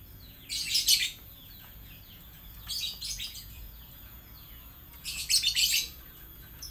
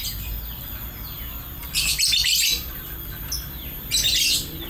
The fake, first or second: first